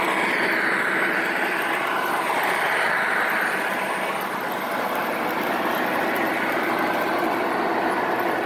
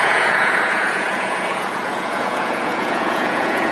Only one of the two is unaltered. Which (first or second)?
first